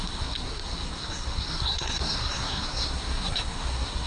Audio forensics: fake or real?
fake